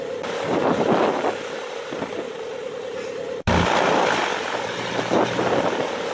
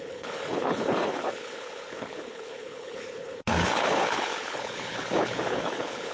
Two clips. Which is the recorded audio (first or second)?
first